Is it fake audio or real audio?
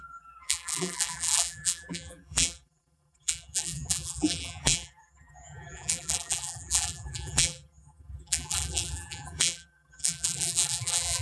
fake